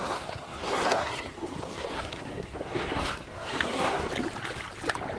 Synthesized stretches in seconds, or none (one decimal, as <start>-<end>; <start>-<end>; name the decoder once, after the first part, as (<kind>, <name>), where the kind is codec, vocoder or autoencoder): 0.0-4.1 (codec, SNAC)